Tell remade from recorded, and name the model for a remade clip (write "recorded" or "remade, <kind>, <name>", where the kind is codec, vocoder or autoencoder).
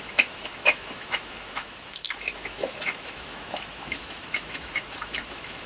remade, autoencoder, DAC-VAE